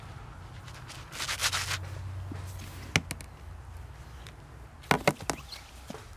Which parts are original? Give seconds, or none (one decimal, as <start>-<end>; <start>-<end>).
0.0-6.2